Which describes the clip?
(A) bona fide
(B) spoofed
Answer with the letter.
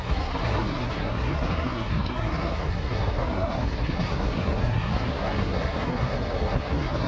B